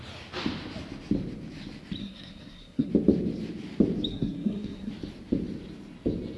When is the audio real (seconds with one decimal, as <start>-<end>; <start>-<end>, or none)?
0.0-2.0; 2.9-4.1; 4.9-6.4